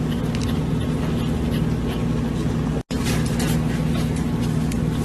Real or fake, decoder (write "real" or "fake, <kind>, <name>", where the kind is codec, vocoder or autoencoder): real